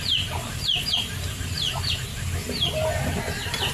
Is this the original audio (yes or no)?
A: yes